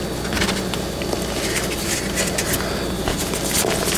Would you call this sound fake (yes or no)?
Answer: no